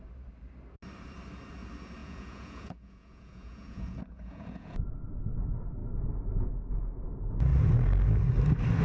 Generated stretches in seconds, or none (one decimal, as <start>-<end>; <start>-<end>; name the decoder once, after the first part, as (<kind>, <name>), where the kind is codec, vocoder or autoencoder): 2.0-4.8 (vocoder, Vocos)